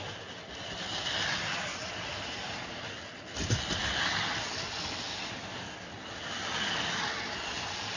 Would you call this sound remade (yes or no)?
no